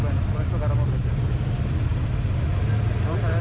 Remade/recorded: recorded